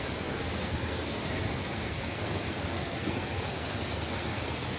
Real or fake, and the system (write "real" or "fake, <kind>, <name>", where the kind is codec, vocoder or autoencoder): fake, codec, SNAC